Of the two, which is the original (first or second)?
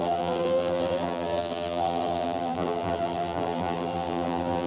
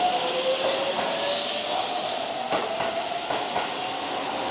second